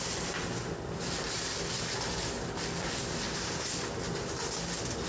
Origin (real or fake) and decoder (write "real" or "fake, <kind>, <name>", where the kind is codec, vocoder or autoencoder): real